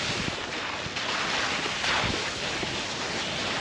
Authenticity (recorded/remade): recorded